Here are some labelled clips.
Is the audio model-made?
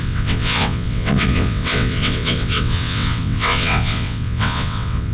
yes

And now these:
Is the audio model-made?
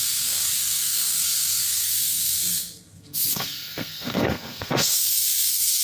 yes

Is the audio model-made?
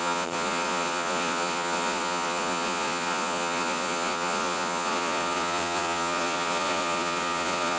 yes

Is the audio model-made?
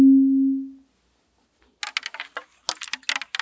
no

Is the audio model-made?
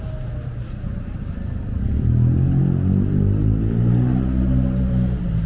no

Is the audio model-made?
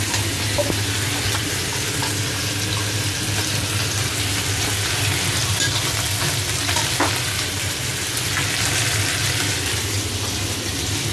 no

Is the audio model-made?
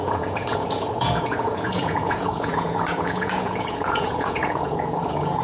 yes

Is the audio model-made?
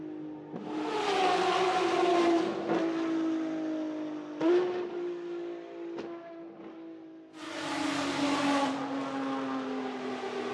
no